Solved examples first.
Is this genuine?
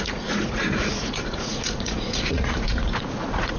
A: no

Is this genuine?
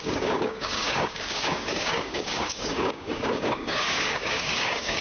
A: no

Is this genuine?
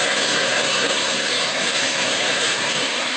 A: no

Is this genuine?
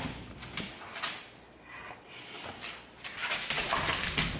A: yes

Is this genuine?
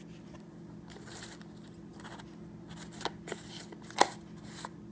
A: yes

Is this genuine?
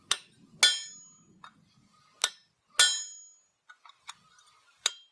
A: yes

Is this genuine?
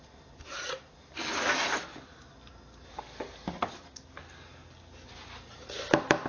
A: yes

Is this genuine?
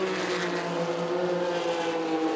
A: yes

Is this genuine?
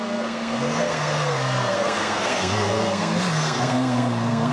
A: no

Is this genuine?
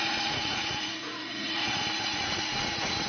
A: no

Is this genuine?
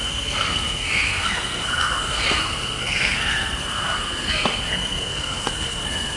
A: no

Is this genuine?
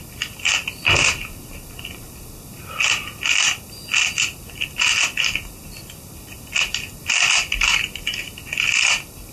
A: yes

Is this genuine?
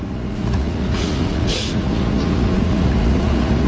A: no